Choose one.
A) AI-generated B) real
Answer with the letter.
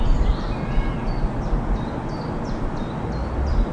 B